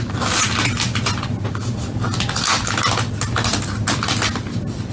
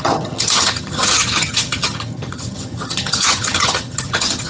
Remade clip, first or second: second